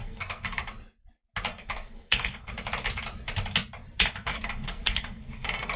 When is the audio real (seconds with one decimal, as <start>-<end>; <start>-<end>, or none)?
0.6-1.5; 2.5-4.2